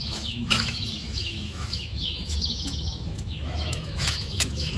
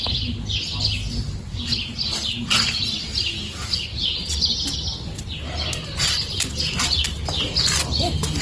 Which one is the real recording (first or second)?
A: second